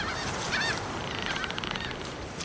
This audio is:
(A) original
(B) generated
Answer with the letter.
B